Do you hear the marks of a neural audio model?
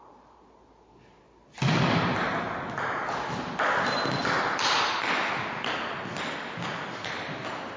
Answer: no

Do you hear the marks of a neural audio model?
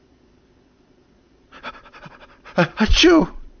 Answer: yes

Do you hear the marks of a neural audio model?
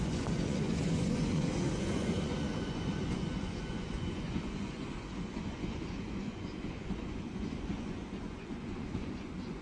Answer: yes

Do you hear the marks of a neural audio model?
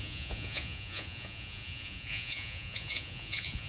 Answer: yes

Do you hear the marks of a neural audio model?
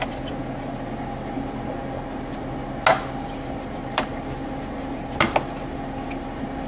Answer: no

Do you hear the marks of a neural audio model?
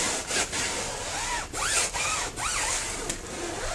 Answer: no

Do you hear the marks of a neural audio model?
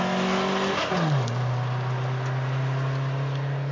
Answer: no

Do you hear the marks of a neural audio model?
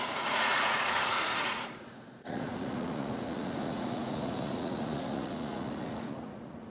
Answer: yes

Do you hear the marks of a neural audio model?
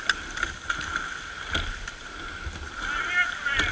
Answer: no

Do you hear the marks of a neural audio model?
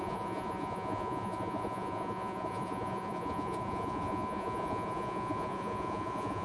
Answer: yes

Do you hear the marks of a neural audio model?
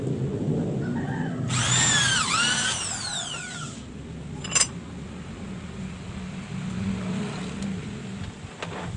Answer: no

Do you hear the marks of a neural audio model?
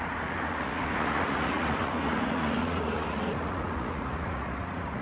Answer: yes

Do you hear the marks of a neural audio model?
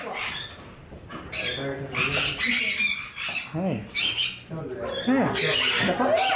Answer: no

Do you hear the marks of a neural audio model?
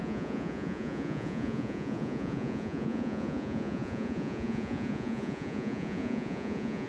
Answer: yes